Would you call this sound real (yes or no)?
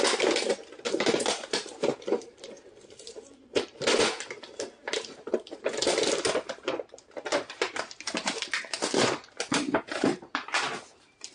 no